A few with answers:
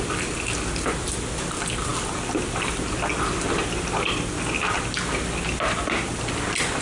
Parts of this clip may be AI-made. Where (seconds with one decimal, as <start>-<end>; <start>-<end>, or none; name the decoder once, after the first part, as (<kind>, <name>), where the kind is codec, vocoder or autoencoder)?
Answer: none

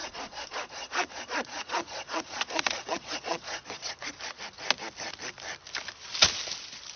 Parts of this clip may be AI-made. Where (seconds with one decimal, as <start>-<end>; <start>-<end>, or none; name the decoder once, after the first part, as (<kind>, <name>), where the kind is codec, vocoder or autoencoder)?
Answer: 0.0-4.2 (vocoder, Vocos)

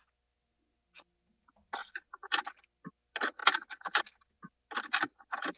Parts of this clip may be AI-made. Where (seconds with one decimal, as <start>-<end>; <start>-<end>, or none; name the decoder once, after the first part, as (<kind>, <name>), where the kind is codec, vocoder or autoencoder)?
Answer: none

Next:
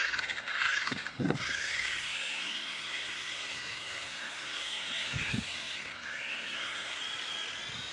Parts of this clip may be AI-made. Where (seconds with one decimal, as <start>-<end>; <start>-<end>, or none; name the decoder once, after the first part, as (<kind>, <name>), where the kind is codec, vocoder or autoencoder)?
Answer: 0.0-7.0 (codec, SNAC)

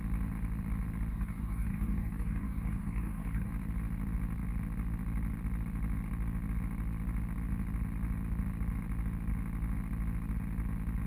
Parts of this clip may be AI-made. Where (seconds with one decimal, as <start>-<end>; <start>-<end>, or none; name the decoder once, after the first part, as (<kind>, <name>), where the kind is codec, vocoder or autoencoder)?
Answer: 1.1-3.5 (codec, DAC)

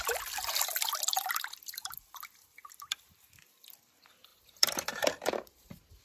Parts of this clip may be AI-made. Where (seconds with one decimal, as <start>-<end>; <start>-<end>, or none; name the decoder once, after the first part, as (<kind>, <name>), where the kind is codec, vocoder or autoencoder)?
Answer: 4.3-6.0 (vocoder, BigVGAN v2)